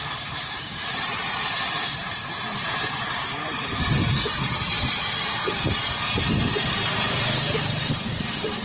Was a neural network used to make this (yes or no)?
yes